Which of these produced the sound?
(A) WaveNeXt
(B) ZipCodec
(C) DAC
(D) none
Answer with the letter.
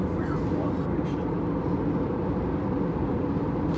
D